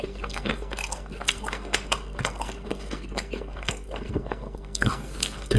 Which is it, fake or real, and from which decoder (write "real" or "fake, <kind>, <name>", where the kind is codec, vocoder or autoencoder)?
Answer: fake, codec, SNAC